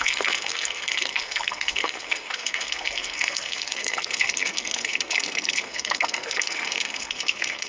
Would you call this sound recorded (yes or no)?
no